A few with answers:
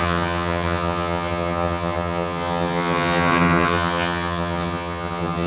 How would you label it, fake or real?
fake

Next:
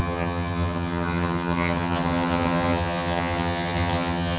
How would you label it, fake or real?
fake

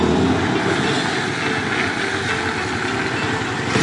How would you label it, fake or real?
real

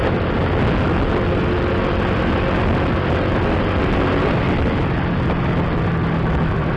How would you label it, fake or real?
real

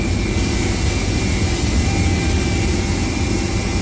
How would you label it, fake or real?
real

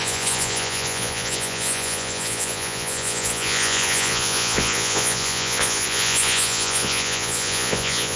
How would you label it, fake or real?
fake